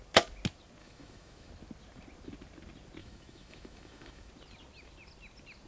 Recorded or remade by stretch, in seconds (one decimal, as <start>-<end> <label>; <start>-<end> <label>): 0.0-0.8 recorded; 0.8-1.5 remade; 1.5-3.0 recorded; 3.0-4.3 remade; 4.3-5.7 recorded